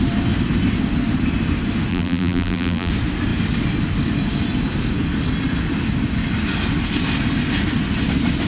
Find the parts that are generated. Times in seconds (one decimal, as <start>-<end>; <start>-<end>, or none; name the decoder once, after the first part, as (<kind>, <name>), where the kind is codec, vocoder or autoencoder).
1.9-2.9 (vocoder, BigVGAN v2)